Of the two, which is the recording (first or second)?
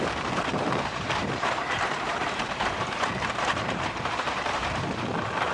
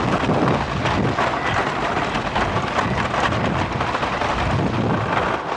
second